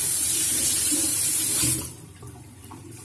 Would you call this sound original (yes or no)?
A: no